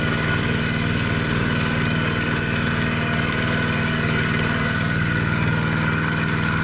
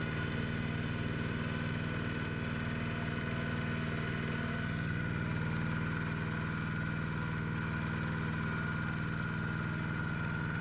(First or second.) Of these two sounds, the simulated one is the first